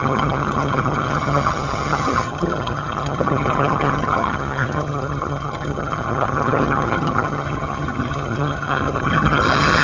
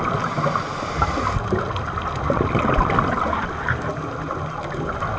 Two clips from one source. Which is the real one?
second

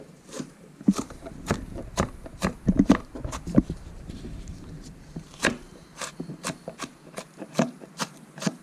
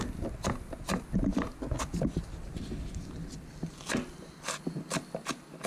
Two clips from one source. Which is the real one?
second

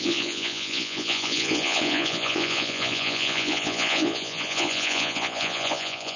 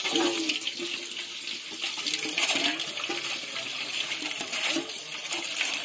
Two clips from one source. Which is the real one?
second